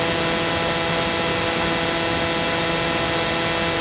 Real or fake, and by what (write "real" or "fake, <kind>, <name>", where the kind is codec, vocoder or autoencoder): real